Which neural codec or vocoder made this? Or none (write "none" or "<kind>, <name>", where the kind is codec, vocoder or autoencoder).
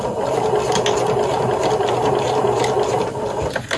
none